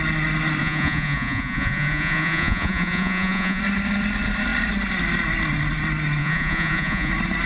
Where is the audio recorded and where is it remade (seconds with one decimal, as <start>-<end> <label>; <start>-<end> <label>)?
0.0-0.6 recorded; 0.6-3.6 remade; 3.6-6.2 recorded; 6.2-7.1 remade; 7.1-7.5 recorded